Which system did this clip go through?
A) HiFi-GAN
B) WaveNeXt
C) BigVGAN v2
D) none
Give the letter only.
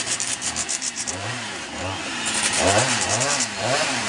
C